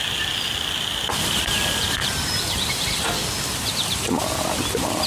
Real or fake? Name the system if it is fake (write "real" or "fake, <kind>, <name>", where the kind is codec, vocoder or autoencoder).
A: real